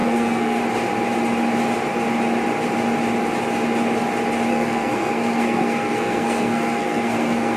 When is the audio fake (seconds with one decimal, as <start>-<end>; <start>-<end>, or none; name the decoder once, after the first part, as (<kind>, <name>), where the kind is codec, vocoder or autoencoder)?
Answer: 0.0-0.6 (codec, SNAC); 4.5-7.6